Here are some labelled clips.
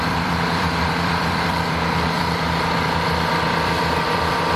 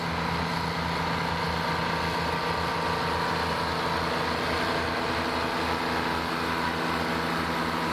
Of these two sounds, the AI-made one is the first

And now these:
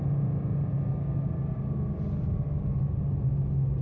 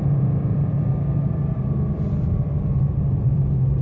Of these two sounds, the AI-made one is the second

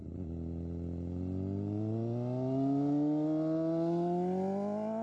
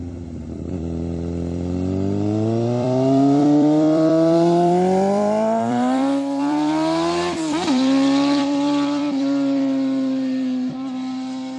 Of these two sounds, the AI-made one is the second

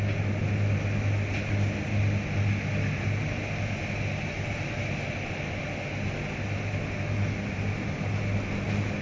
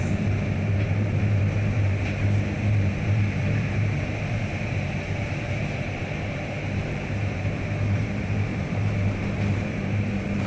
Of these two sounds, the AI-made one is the second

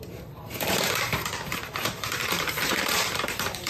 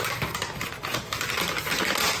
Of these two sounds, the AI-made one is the first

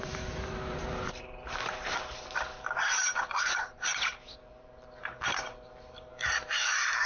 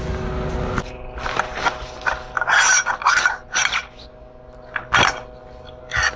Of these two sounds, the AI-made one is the first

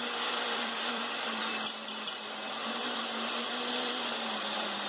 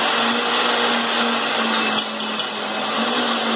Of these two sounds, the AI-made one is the first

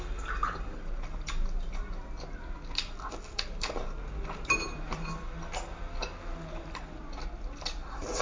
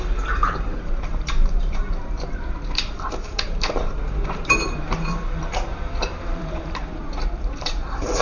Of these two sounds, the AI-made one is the second